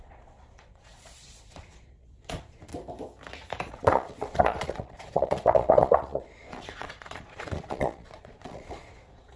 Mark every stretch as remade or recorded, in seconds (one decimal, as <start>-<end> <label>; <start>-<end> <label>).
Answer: 0.0-2.7 remade; 2.7-3.7 recorded; 3.7-9.4 remade